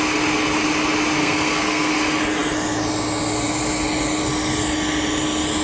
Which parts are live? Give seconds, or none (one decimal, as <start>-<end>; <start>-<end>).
0.0-1.2; 1.9-5.6